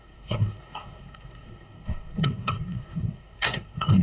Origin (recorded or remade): remade